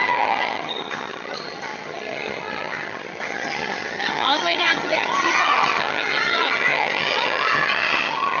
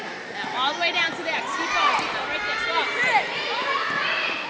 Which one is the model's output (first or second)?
first